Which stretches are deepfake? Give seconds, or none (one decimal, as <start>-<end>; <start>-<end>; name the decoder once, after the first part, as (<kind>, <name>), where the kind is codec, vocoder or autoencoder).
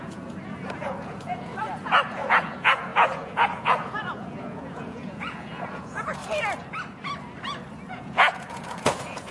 0.0-1.5 (vocoder, Vocos); 2.1-6.2; 7.9-9.3